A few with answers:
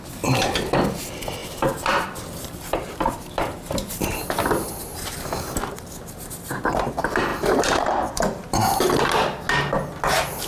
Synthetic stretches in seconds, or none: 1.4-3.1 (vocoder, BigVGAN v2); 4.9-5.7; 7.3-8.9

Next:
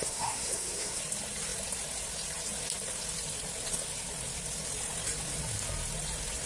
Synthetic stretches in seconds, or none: 0.0-1.0 (codec, SNAC)

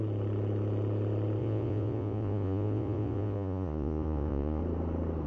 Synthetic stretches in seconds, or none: 1.4-4.6 (vocoder, Vocos)

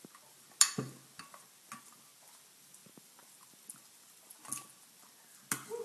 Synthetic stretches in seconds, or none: 2.8-4.3 (vocoder, BigVGAN v2)

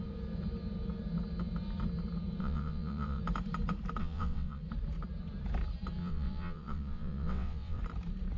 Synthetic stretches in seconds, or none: 2.4-3.2 (vocoder, WaveNeXt); 4.0-4.6; 6.0-7.8